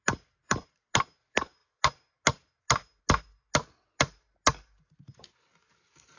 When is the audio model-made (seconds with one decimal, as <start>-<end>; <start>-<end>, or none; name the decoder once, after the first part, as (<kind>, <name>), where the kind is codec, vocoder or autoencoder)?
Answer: none